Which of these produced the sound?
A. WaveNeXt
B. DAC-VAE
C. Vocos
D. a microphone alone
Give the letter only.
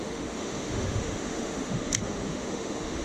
B